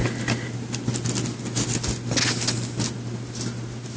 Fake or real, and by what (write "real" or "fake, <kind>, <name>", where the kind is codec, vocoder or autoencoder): real